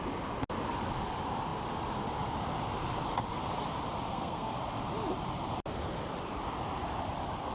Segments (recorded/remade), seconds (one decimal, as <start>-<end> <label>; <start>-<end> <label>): 0.0-4.1 recorded; 4.1-4.6 remade; 4.6-7.5 recorded